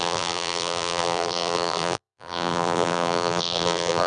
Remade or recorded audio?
remade